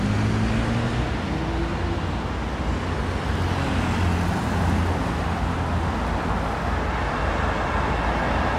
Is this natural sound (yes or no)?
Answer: yes